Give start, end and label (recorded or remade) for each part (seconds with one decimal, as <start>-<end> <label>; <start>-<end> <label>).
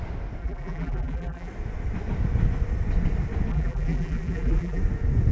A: 0.0-0.4 recorded; 0.4-1.5 remade; 1.5-3.5 recorded; 3.5-4.8 remade; 4.8-5.3 recorded